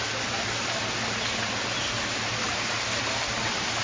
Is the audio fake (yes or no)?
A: no